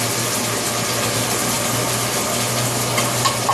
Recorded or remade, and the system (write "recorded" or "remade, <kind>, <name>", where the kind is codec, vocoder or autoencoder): recorded